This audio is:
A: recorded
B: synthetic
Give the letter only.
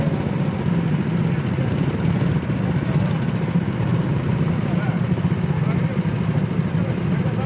A